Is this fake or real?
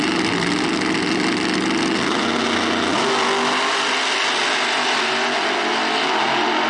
real